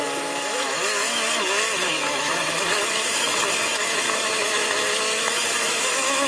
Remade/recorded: remade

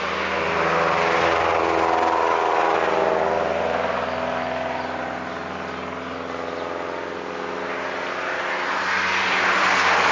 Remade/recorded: recorded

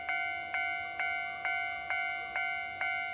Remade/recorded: recorded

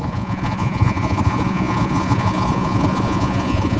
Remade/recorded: remade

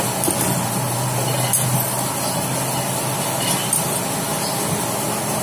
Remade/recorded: recorded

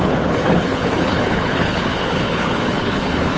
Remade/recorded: remade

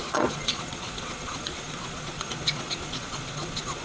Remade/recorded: remade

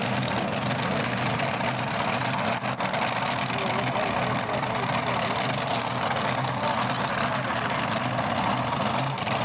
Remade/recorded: recorded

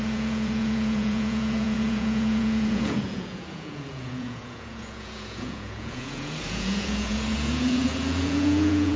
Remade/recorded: remade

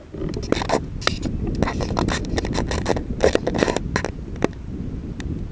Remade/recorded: recorded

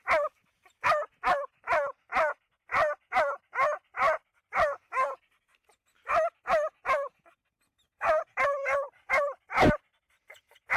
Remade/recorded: recorded